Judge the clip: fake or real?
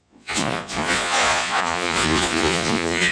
fake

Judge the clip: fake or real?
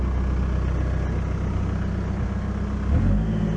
real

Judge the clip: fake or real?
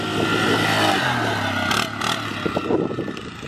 real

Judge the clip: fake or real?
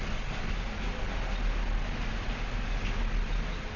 real